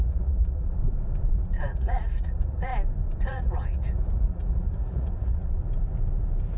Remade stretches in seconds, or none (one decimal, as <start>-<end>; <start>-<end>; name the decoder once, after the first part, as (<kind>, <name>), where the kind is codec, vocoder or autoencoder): 0.0-0.8 (vocoder, Vocos); 1.3-2.7; 3.2-5.6